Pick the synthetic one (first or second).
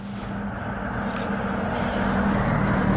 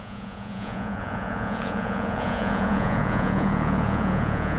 second